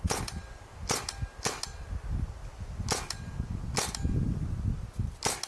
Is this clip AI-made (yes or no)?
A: no